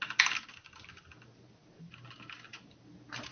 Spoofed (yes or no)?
no